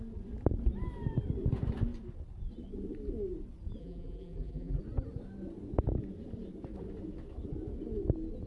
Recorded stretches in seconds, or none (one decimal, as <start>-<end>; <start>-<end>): 0.0-3.8; 4.8-8.5